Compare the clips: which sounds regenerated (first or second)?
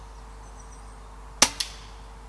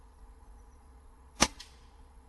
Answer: second